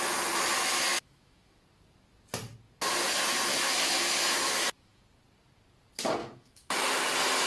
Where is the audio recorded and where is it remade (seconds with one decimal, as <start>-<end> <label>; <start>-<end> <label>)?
0.0-0.9 recorded; 0.9-1.6 remade; 1.6-3.5 recorded; 3.5-5.0 remade; 5.0-6.2 recorded; 6.2-7.0 remade; 7.0-7.5 recorded